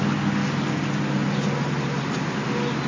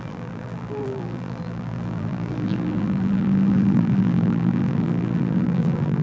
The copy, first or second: second